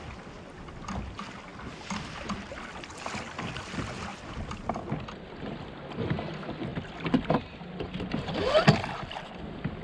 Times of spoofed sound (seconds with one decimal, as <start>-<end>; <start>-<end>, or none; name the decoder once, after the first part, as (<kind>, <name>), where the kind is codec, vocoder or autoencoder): none